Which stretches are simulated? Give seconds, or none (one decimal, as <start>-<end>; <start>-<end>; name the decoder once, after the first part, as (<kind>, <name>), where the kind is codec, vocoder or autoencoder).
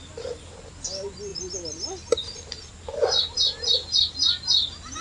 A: none